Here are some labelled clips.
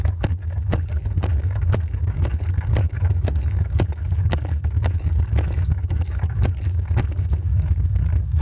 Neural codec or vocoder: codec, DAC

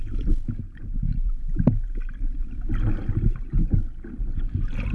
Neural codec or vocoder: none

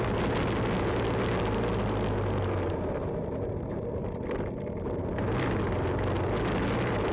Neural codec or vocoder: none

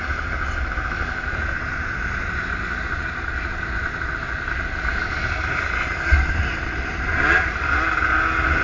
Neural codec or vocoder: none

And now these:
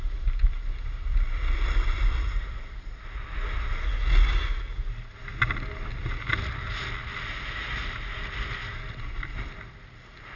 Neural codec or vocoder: none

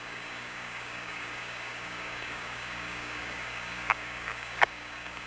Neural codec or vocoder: codec, DAC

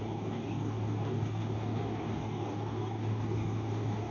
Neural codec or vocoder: codec, DAC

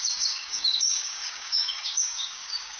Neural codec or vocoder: codec, DAC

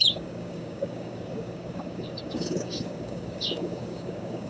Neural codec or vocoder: codec, DAC